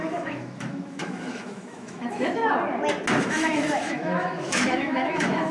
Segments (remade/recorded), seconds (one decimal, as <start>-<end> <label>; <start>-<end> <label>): 0.0-2.4 remade; 2.4-3.2 recorded; 3.2-5.5 remade